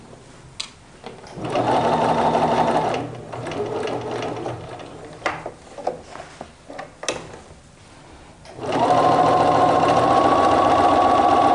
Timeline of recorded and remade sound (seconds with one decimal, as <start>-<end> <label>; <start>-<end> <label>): 0.0-11.5 recorded